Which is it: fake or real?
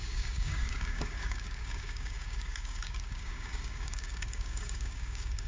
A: fake